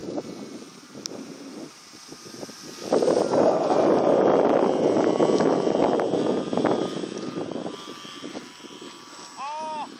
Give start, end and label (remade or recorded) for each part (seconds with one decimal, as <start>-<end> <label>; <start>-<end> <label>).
0.0-10.0 recorded